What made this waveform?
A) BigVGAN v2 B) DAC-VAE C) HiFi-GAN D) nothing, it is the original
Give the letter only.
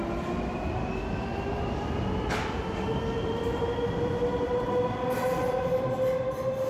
D